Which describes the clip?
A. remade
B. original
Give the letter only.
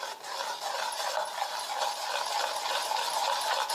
B